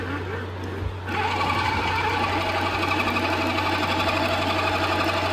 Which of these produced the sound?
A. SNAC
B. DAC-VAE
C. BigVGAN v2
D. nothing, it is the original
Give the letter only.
D